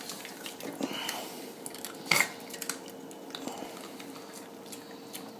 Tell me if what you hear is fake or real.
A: real